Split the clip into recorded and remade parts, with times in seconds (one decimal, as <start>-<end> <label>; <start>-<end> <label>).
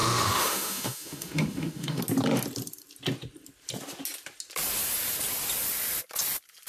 0.0-2.0 remade; 2.0-6.7 recorded